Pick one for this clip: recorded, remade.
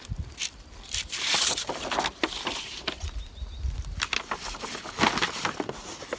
recorded